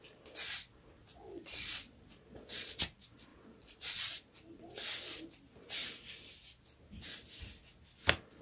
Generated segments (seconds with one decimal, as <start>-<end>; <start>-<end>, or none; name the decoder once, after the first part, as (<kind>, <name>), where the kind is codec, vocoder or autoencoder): 1.0-2.8 (vocoder, Vocos); 3.3-4.1